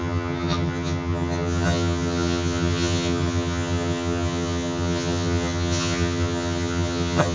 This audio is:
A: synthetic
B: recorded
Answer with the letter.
A